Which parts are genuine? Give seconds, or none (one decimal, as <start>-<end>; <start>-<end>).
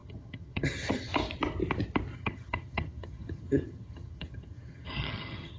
1.1-2.1